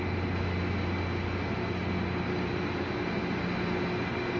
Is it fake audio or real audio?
real